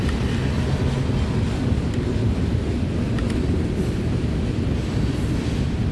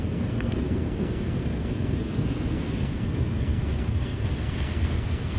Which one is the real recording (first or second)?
first